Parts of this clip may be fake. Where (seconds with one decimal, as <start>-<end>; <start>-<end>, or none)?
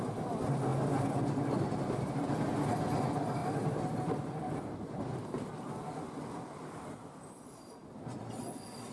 3.4-7.1